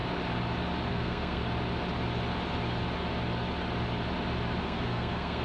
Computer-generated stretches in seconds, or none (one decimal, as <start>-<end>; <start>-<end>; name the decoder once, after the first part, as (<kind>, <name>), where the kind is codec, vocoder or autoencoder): 0.9-1.4 (codec, SNAC); 4.6-5.4

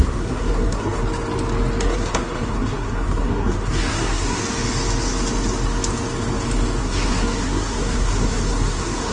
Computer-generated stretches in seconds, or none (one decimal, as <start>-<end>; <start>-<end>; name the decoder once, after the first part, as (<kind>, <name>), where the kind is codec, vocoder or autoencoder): 0.0-1.0 (codec, SNAC); 1.8-4.4; 6.8-9.1